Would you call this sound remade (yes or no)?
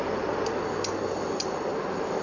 no